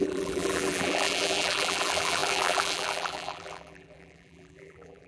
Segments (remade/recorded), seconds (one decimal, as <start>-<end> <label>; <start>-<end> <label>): 0.0-5.1 remade